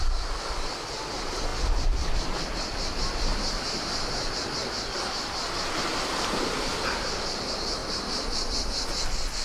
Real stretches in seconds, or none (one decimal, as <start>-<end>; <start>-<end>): 0.0-3.3; 4.1-7.8; 8.5-9.4